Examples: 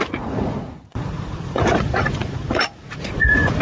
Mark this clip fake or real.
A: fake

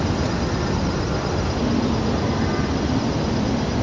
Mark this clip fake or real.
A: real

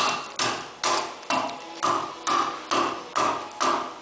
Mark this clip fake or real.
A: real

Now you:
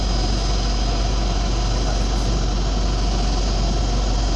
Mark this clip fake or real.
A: real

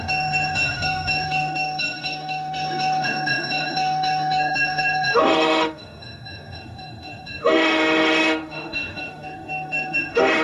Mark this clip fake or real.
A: fake